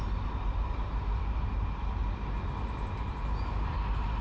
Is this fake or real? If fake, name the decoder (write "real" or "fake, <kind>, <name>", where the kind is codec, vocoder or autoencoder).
real